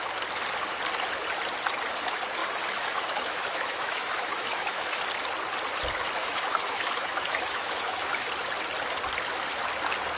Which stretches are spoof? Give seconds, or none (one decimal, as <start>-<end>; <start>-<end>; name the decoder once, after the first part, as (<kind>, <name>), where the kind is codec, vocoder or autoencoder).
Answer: 2.4-5.0 (autoencoder, DAC-VAE); 6.2-8.3